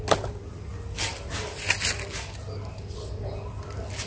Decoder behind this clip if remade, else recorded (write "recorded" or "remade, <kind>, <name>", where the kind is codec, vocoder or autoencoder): recorded